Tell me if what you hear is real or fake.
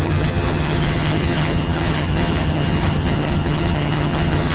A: fake